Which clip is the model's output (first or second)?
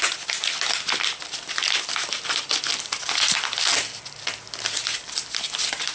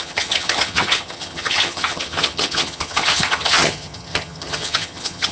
second